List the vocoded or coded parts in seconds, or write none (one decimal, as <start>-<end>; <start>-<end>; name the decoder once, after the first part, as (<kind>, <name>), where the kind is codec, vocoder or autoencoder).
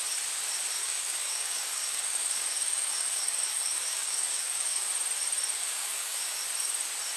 0.8-4.9 (codec, DAC); 5.6-6.4